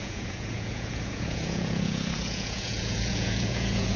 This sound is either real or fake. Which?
fake